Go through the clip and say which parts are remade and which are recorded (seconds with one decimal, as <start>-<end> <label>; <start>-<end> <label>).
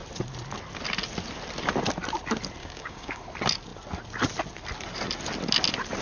0.0-2.6 recorded; 2.6-3.2 remade; 3.2-6.0 recorded